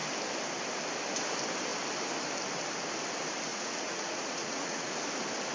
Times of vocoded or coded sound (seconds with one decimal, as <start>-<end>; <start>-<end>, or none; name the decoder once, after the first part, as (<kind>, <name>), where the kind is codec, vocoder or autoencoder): 3.5-4.9 (vocoder, Vocos)